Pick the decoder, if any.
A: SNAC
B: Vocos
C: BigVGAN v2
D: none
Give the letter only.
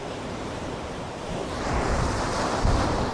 C